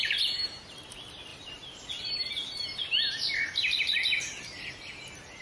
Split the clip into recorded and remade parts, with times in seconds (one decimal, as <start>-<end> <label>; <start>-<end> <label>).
0.0-1.3 recorded; 1.3-2.6 remade; 2.6-5.4 recorded